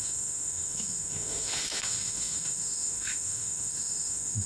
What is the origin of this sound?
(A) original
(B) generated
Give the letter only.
B